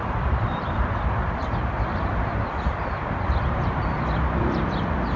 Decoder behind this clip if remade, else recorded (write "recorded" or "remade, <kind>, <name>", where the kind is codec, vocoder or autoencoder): remade, vocoder, BigVGAN v2